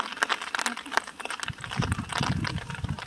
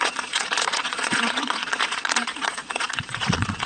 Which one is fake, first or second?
second